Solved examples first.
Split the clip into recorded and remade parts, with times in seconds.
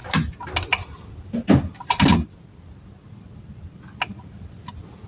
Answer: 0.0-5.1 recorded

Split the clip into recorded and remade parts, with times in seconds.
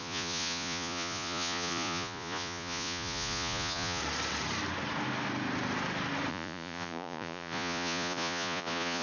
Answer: 0.0-4.0 remade; 4.0-6.3 recorded; 6.3-9.0 remade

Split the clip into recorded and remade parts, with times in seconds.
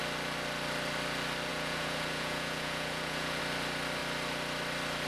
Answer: 0.0-1.5 recorded; 1.5-3.4 remade; 3.4-5.1 recorded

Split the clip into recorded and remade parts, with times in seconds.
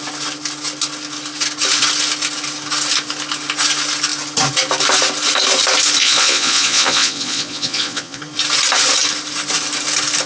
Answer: 0.0-6.0 recorded; 6.0-8.2 remade; 8.2-10.3 recorded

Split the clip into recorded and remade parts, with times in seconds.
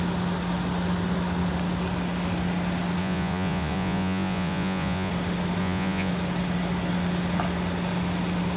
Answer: 0.0-3.0 recorded; 3.0-5.1 remade; 5.1-5.6 recorded; 5.6-6.1 remade; 6.1-8.6 recorded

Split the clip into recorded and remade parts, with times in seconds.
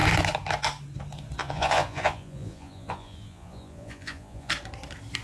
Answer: 0.0-1.4 recorded; 1.4-4.5 remade; 4.5-5.2 recorded